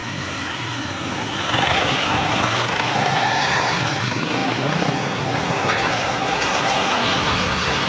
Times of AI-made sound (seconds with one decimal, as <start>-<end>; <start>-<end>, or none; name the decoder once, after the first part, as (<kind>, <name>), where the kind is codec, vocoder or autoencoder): 0.0-7.9 (codec, SNAC)